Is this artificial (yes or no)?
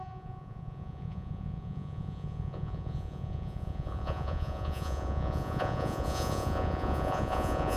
yes